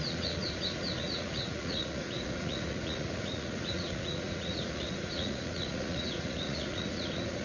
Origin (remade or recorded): remade